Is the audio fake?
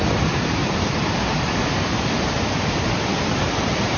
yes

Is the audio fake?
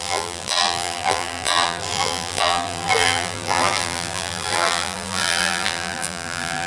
yes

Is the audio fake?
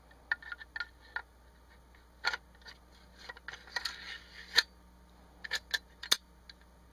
no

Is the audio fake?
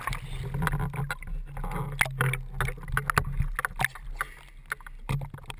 no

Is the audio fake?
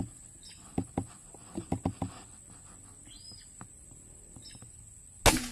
no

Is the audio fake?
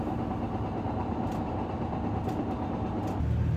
no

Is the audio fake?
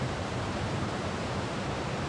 yes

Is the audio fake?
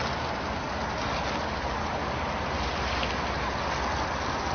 no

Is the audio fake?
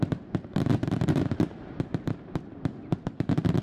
yes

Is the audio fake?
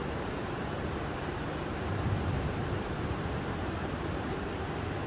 yes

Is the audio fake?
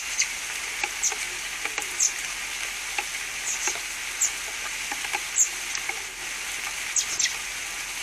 no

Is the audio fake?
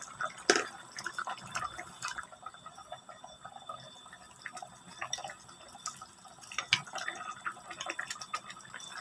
no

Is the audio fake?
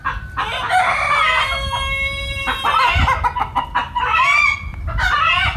no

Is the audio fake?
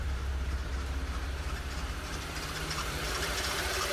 yes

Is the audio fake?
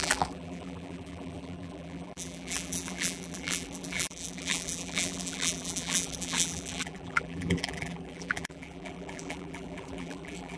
yes